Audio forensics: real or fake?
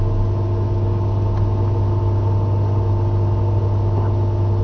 real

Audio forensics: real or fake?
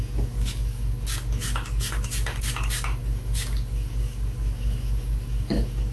fake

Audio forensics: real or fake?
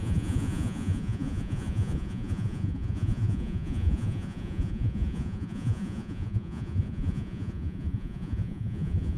fake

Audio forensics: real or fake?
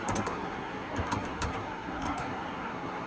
fake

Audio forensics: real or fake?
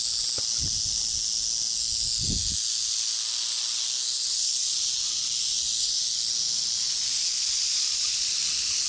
real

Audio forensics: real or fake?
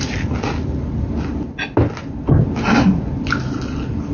real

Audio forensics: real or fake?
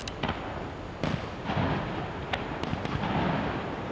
real